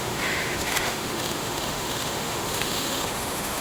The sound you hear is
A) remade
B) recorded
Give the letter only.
A